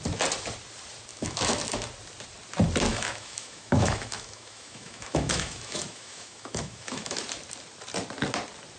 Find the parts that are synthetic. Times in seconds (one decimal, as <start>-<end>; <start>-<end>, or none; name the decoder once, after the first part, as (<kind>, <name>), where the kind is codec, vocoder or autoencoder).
1.1-1.6 (autoencoder, DAC-VAE); 2.9-7.2